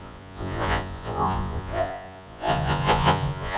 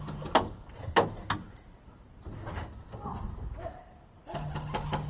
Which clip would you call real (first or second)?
second